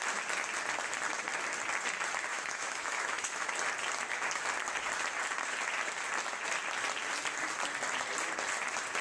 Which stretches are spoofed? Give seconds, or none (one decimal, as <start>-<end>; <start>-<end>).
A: 2.3-3.5